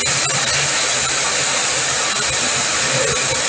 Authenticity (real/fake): real